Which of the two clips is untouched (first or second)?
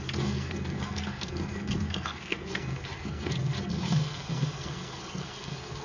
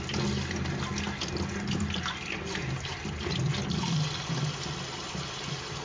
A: second